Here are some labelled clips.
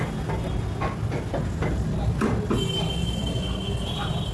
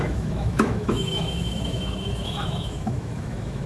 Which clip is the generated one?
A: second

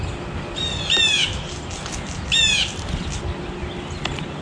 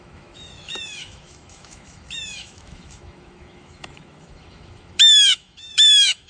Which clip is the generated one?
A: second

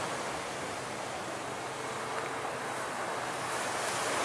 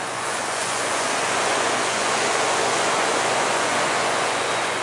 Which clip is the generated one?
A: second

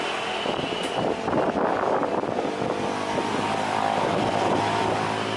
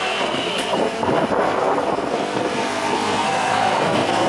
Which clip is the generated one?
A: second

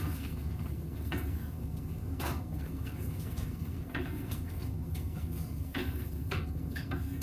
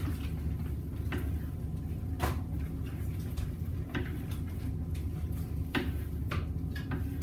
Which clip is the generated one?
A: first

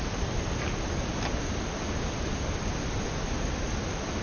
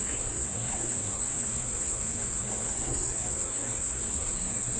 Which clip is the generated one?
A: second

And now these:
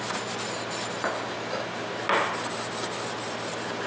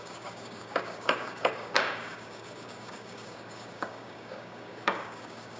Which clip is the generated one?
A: second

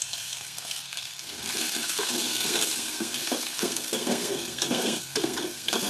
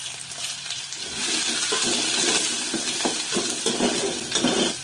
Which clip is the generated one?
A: first